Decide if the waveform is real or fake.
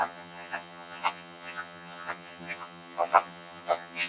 fake